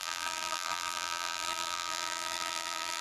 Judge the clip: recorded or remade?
remade